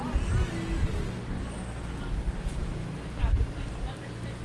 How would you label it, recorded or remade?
recorded